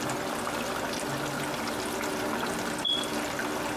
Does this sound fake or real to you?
real